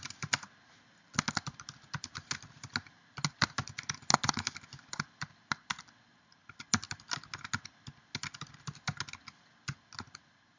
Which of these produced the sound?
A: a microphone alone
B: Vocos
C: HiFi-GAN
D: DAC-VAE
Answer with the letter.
A